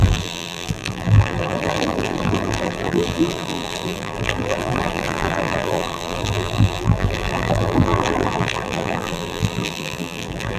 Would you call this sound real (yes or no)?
no